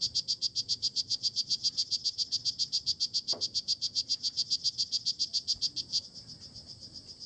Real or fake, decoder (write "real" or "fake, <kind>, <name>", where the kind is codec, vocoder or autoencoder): real